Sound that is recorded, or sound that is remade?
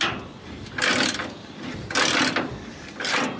recorded